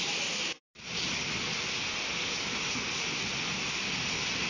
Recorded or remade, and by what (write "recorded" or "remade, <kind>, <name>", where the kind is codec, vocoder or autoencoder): recorded